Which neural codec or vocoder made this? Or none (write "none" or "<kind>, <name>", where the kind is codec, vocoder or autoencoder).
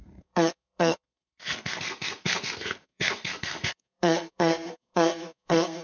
codec, SNAC